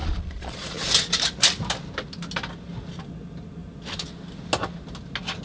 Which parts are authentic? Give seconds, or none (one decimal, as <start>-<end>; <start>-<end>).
0.8-5.4